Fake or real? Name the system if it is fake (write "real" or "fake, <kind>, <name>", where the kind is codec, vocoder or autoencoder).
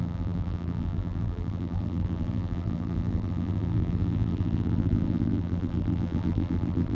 fake, vocoder, BigVGAN v2